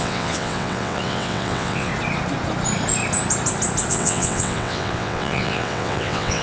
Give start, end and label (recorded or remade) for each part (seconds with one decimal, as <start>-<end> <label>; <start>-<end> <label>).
0.0-1.9 remade; 1.9-3.9 recorded; 3.9-6.4 remade